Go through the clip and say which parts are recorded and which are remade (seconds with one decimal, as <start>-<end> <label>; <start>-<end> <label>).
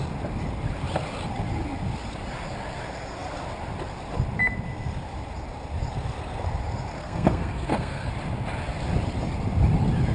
0.0-7.0 recorded; 7.0-8.1 remade; 8.1-10.1 recorded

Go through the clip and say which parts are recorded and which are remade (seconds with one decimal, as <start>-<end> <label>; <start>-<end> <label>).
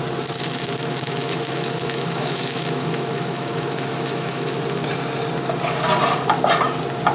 0.0-0.4 recorded; 0.4-4.5 remade; 4.5-7.1 recorded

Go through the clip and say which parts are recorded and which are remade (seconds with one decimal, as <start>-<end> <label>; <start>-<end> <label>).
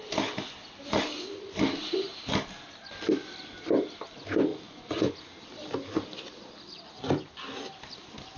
0.0-4.5 recorded; 4.5-5.1 remade; 5.1-8.4 recorded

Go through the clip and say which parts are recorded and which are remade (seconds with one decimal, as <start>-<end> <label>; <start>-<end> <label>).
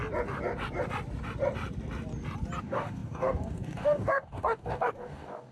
0.0-2.6 recorded; 2.6-5.5 remade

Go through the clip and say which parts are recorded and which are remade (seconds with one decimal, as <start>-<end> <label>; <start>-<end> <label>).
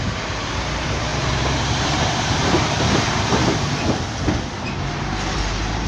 0.0-3.4 remade; 3.4-4.9 recorded; 4.9-5.9 remade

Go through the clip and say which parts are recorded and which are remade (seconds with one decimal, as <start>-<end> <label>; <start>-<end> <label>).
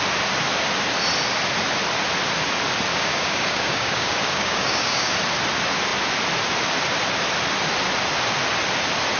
0.0-2.9 recorded; 2.9-5.1 remade; 5.1-9.2 recorded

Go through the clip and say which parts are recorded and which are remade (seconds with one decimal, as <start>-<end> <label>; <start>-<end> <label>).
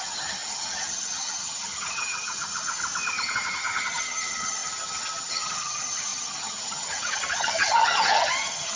0.0-2.8 remade; 2.8-3.3 recorded; 3.3-8.8 remade